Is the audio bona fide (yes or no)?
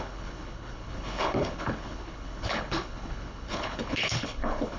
no